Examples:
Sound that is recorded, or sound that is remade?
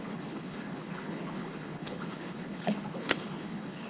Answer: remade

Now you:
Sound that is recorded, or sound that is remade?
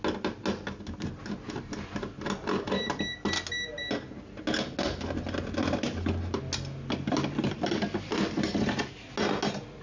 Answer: recorded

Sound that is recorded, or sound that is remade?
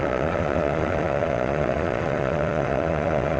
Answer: remade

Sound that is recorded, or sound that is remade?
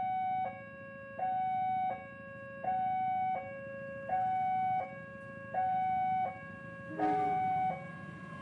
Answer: recorded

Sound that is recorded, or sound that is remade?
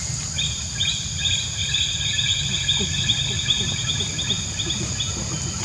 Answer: recorded